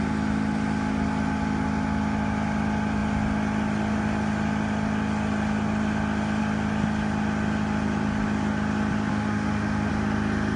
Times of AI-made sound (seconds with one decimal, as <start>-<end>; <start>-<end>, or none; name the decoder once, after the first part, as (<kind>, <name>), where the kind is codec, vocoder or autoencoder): 9.1-9.9 (autoencoder, DAC-VAE)